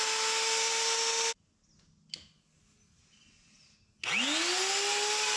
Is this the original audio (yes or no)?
yes